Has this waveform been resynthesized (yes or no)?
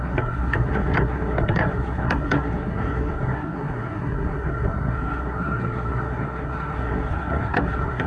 yes